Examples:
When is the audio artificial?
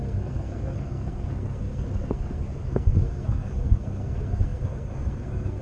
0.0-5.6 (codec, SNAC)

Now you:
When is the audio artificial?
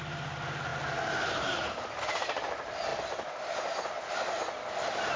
none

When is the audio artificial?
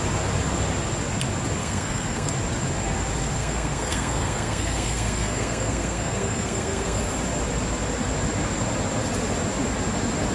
1.6-2.3 (codec, SNAC); 3.4-7.0